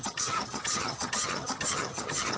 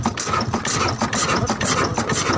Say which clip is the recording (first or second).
second